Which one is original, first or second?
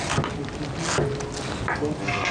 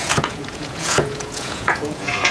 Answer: first